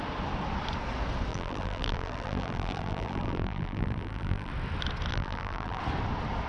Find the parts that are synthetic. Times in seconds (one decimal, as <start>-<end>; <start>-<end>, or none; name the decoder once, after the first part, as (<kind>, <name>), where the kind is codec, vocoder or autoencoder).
1.3-4.5 (vocoder, BigVGAN v2); 5.1-5.8

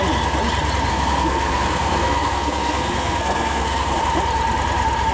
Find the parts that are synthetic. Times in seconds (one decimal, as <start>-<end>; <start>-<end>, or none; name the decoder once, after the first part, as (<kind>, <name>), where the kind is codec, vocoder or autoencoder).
0.9-4.0 (codec, SNAC)

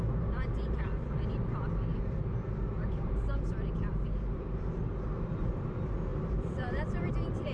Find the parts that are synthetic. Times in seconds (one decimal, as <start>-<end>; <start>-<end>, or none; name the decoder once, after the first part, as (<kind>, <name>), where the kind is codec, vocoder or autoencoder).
1.9-4.6 (vocoder, BigVGAN v2); 6.1-7.1

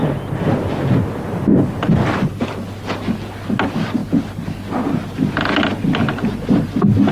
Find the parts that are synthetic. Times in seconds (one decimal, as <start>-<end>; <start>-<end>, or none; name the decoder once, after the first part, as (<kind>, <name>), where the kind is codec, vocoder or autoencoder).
none